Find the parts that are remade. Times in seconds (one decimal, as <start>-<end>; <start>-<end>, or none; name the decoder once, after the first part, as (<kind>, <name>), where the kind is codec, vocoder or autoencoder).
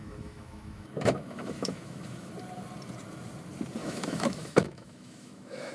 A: 0.0-2.3 (autoencoder, DAC-VAE); 3.8-5.7